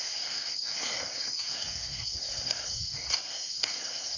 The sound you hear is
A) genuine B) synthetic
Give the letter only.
B